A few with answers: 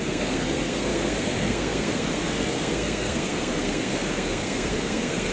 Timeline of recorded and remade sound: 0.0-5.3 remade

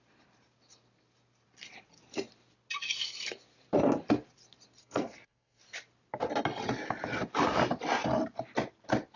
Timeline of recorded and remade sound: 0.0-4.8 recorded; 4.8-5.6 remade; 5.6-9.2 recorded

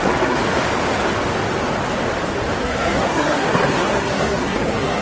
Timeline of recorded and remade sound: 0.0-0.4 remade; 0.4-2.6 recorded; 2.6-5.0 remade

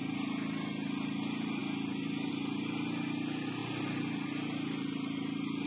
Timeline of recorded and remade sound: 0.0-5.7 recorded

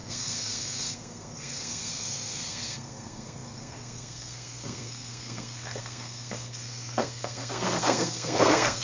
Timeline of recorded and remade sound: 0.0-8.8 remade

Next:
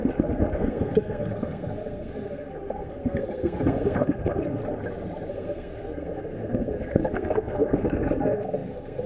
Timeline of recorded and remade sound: 0.0-4.6 remade; 4.6-5.3 recorded; 5.3-9.1 remade

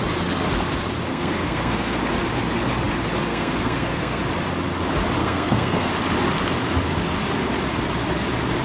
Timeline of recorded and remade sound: 0.0-1.1 recorded; 1.1-2.0 remade; 2.0-3.3 recorded; 3.3-4.2 remade; 4.2-5.2 recorded; 5.2-5.9 remade; 5.9-8.6 recorded